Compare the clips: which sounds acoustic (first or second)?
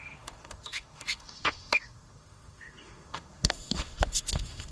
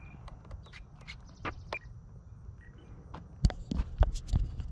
second